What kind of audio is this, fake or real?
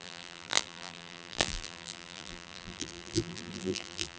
fake